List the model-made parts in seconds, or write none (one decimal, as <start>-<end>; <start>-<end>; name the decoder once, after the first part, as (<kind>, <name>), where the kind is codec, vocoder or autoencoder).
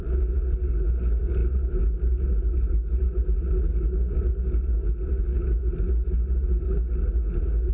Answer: none